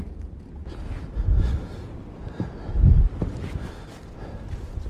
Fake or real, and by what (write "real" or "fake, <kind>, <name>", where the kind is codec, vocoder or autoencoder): real